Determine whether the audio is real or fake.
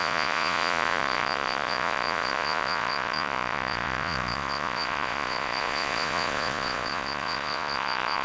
fake